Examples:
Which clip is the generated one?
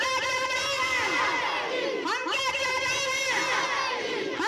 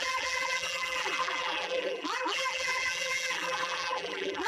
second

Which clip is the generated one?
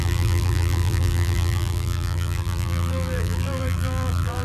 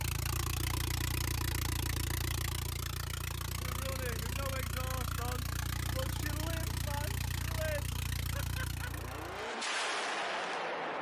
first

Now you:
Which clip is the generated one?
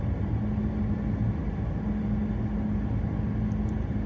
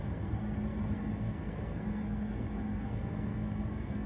second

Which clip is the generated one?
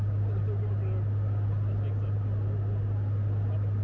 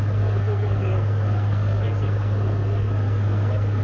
second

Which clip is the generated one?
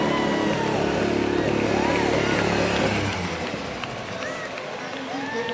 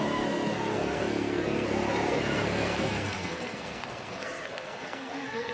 second